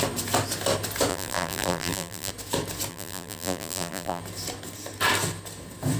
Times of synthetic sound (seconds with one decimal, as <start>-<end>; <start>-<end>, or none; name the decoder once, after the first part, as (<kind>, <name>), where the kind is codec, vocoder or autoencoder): 1.1-2.3 (vocoder, BigVGAN v2); 2.9-4.2